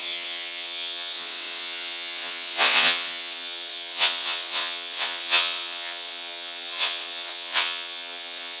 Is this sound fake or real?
fake